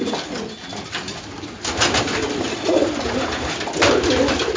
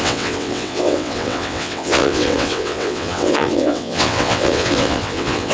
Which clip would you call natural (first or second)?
first